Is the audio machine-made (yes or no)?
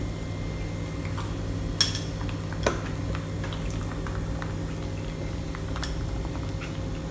no